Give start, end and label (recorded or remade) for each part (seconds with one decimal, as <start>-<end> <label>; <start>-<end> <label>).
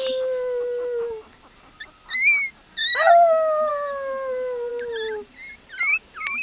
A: 0.0-6.4 recorded